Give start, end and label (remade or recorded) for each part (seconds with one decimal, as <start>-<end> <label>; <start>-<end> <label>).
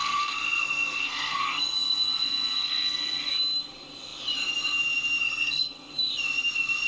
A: 0.0-3.3 remade; 3.3-5.2 recorded; 5.2-5.9 remade; 5.9-6.9 recorded